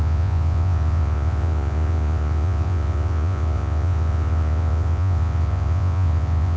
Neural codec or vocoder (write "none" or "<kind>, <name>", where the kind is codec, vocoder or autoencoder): vocoder, Vocos